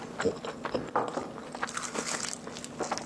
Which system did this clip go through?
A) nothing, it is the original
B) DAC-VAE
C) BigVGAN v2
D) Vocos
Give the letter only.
A